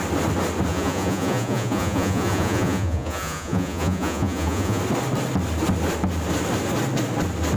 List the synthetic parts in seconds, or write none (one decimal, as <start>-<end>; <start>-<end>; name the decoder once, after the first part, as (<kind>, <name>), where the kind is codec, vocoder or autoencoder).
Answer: 0.7-4.8 (vocoder, Vocos)